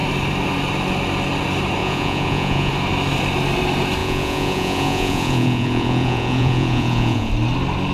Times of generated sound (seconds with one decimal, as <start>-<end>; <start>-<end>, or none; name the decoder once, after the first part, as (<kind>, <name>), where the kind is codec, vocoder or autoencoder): 1.8-2.7 (vocoder, Vocos); 4.0-7.3